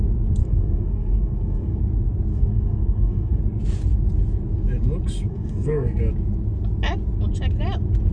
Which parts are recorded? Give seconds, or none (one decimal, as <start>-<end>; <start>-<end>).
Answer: 0.0-0.4; 1.8-2.3; 3.4-5.3; 6.0-8.1